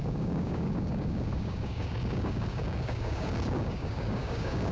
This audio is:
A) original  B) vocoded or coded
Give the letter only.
B